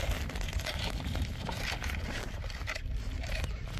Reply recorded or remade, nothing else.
recorded